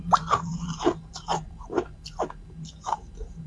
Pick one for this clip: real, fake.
fake